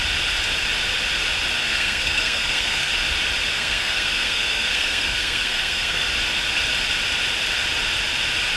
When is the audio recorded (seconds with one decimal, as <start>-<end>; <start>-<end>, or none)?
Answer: 0.0-1.6; 2.9-3.5; 6.1-8.6

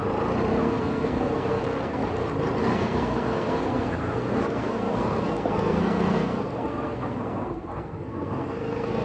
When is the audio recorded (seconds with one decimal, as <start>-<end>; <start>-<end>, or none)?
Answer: 0.0-0.6; 2.0-2.6

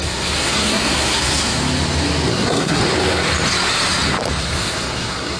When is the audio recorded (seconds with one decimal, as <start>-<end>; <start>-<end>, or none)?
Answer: 1.6-2.3; 2.8-4.4

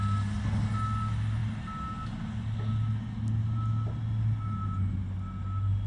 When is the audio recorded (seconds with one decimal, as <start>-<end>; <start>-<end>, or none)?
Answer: 0.0-5.9